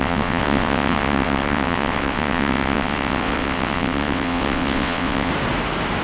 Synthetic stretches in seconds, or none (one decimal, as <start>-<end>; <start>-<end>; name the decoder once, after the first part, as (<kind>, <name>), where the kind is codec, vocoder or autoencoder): 0.0-5.3 (vocoder, WaveNeXt)